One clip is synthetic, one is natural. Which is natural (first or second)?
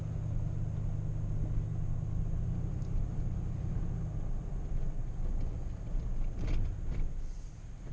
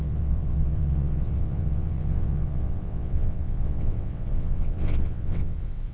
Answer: first